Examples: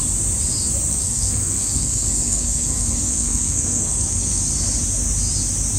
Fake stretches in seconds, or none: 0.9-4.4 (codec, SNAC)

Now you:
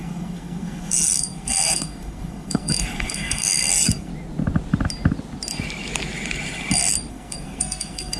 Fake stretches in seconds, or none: 0.0-4.1 (codec, SNAC); 7.1-8.2

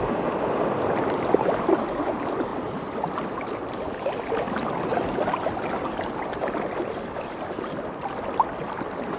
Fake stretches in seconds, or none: none

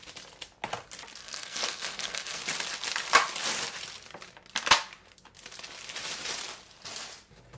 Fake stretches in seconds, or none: 1.2-2.4 (codec, SNAC)

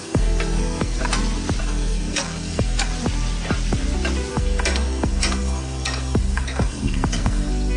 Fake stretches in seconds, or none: 0.0-1.0 (codec, SNAC); 1.6-2.9; 4.3-7.8

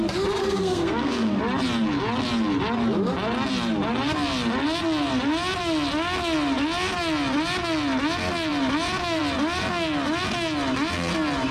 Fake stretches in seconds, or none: 0.4-1.4 (codec, SNAC)

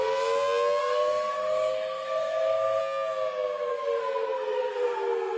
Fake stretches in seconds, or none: 0.8-2.8 (codec, SNAC); 3.7-5.4

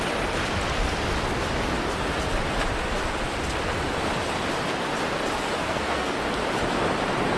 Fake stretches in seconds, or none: 5.6-6.2 (codec, SNAC)